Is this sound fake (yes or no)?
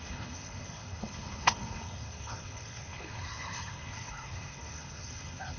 yes